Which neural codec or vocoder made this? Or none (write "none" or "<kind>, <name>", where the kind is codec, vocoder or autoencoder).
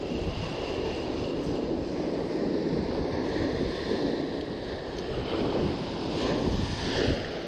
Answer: none